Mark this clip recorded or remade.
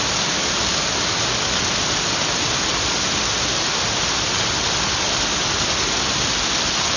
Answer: recorded